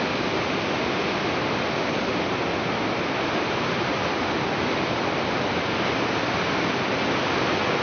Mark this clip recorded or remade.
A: recorded